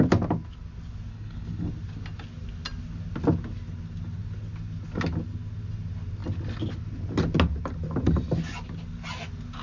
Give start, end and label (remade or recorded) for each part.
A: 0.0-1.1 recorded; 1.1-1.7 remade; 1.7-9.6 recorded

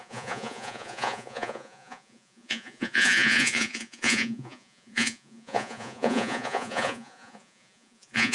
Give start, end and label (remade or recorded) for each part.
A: 0.0-8.3 remade

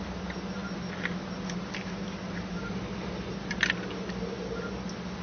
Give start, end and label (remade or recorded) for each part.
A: 0.0-5.2 recorded

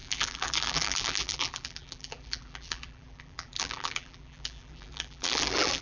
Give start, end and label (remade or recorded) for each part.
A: 0.0-5.8 remade

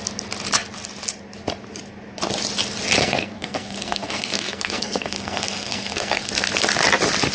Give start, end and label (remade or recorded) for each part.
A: 0.0-3.0 recorded; 3.0-6.3 remade; 6.3-7.3 recorded

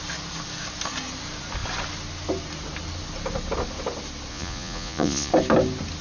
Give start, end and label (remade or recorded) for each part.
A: 0.0-4.3 recorded; 4.3-5.3 remade; 5.3-6.0 recorded

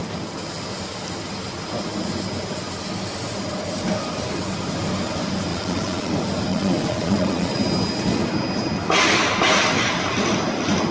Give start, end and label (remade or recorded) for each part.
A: 0.0-5.5 recorded; 5.5-6.1 remade; 6.1-6.5 recorded; 6.5-7.6 remade; 7.6-10.9 recorded

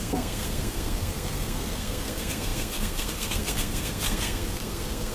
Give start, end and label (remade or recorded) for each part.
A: 0.0-5.1 remade